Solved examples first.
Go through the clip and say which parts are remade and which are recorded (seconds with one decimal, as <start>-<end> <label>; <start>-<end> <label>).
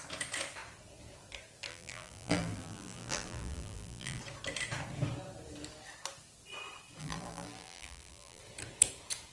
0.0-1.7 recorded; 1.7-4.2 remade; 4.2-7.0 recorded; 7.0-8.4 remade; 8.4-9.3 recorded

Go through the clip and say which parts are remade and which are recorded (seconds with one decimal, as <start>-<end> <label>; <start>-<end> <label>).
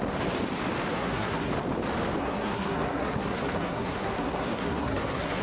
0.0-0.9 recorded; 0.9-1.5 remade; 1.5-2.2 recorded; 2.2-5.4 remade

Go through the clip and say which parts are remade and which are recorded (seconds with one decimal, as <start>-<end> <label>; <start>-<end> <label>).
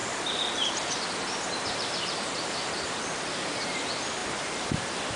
0.0-3.0 remade; 3.0-4.2 recorded; 4.2-4.8 remade; 4.8-5.2 recorded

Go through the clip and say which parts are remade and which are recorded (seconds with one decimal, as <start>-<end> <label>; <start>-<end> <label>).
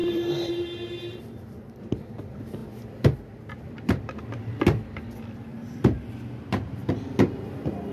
0.0-0.5 remade; 0.5-5.5 recorded; 5.5-6.1 remade; 6.1-7.9 recorded